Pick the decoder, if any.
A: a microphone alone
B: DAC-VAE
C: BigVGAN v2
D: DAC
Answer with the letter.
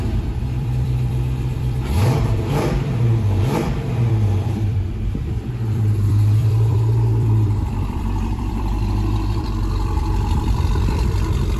C